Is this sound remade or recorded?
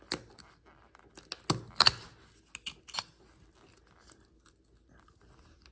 recorded